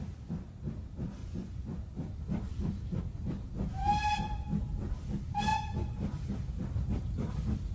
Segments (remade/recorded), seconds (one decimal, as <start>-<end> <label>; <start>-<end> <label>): 0.0-1.2 recorded; 1.2-1.8 remade; 1.8-5.5 recorded; 5.5-6.0 remade; 6.0-7.7 recorded

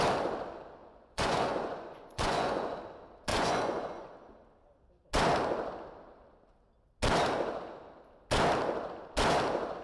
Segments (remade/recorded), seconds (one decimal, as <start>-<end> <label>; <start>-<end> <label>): 0.0-0.8 recorded; 0.8-2.8 remade; 2.8-3.3 recorded; 3.3-4.1 remade; 4.1-9.8 recorded

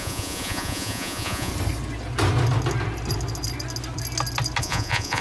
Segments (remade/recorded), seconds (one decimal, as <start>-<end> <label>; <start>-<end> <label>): 0.0-1.5 remade; 1.5-4.6 recorded; 4.6-5.2 remade

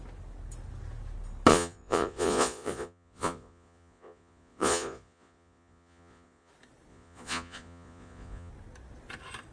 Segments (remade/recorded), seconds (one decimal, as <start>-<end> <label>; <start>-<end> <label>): 0.0-1.5 recorded; 1.5-6.5 remade; 6.5-6.9 recorded; 6.9-8.5 remade; 8.5-9.5 recorded

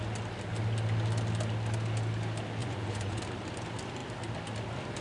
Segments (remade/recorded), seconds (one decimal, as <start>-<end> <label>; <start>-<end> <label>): 0.0-2.6 recorded; 2.6-3.2 remade; 3.2-5.0 recorded

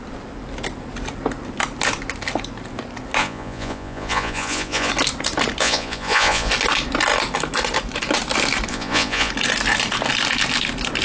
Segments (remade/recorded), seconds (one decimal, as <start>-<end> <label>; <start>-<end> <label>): 0.0-3.2 recorded; 3.2-4.9 remade; 4.9-5.6 recorded; 5.6-6.5 remade; 6.5-8.7 recorded; 8.7-9.3 remade; 9.3-11.0 recorded

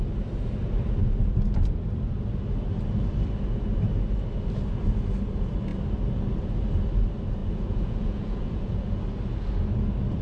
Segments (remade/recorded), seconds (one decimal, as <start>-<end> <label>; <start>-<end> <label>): 0.0-7.4 recorded; 7.4-9.0 remade; 9.0-10.2 recorded

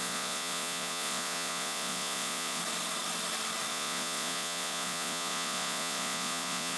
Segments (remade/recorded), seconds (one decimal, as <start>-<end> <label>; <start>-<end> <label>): 0.0-2.6 remade; 2.6-3.7 recorded; 3.7-6.8 remade